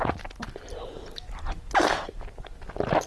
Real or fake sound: real